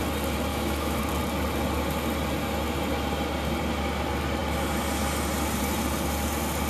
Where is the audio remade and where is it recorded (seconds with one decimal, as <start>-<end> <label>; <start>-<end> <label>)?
0.0-0.5 recorded; 0.5-1.0 remade; 1.0-6.7 recorded